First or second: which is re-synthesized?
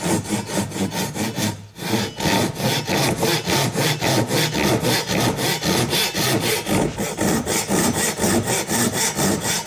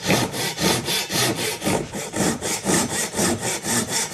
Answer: second